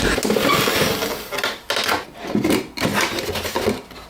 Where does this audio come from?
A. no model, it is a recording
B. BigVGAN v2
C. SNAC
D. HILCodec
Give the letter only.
A